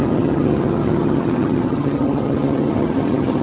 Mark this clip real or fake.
fake